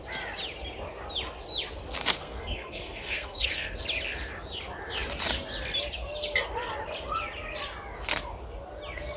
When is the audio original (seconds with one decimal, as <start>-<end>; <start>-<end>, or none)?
0.0-2.1; 3.8-9.2